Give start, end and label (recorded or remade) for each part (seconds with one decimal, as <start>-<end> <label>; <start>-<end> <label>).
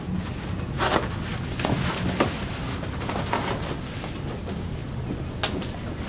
0.0-6.1 recorded